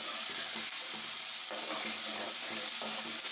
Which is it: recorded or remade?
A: recorded